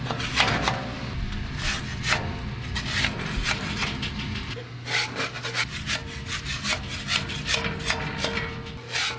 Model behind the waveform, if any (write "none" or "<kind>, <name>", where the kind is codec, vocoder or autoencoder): none